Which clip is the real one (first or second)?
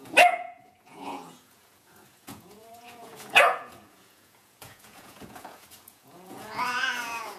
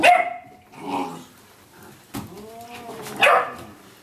second